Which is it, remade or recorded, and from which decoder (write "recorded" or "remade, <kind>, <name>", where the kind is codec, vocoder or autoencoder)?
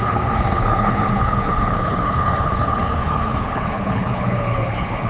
remade, codec, HILCodec